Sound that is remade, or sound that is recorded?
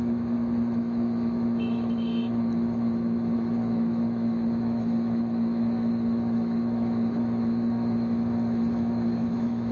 remade